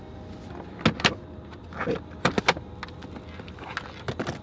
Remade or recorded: recorded